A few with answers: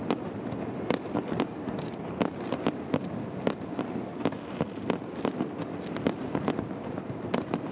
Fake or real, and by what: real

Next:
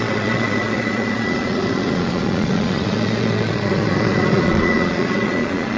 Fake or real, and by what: fake, vocoder, Vocos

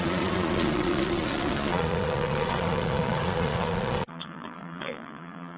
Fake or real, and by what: fake, vocoder, Vocos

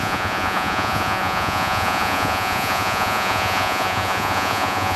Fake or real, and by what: fake, vocoder, Vocos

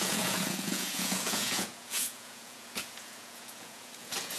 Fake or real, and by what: fake, vocoder, Vocos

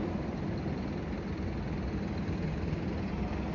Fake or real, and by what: real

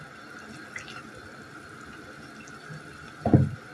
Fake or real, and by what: real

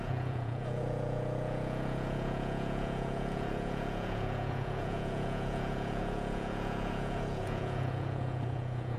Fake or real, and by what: fake, vocoder, Vocos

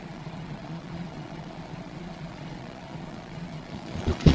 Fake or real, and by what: fake, vocoder, Vocos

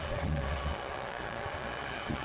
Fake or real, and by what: fake, vocoder, Vocos